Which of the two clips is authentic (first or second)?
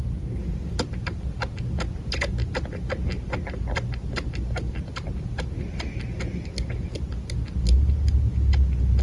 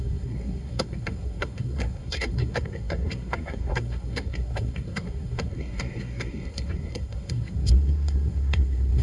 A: first